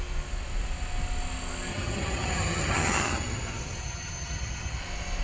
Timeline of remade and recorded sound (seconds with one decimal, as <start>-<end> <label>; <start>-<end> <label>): 0.0-1.7 recorded; 1.7-4.8 remade; 4.8-5.2 recorded